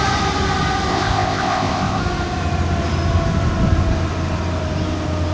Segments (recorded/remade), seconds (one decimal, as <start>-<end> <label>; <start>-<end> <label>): 0.0-0.9 recorded; 0.9-2.0 remade; 2.0-5.3 recorded